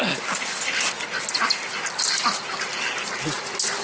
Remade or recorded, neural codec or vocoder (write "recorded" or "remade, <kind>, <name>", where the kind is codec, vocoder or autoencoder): recorded